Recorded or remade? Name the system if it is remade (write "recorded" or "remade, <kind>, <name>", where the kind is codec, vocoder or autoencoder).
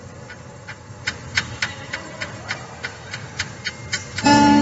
remade, vocoder, BigVGAN v2